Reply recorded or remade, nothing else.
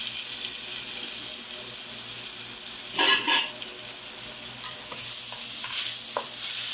recorded